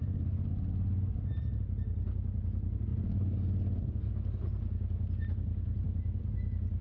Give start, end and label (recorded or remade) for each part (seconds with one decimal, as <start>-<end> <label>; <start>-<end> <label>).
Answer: 0.0-6.8 recorded